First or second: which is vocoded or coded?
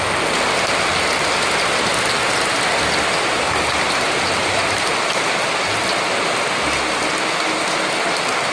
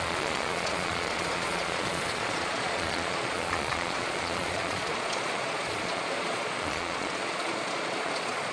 second